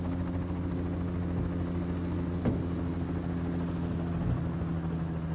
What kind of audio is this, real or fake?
real